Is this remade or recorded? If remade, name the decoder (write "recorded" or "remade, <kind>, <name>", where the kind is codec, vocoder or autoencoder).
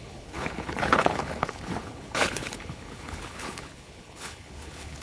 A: remade, codec, HILCodec